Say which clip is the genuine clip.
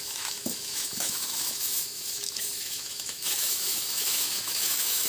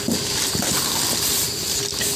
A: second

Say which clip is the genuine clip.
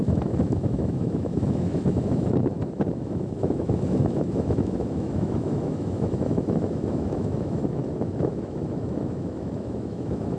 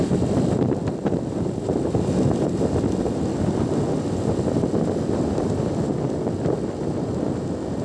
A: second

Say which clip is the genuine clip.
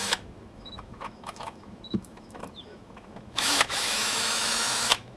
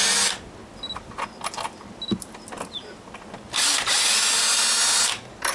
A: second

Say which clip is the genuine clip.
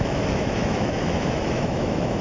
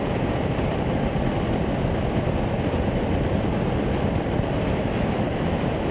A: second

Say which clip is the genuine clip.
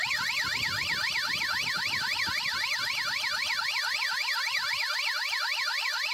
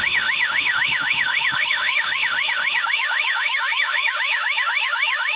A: first